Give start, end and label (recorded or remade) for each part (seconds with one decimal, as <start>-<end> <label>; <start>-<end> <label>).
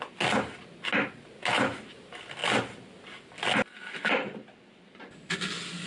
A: 0.0-5.9 recorded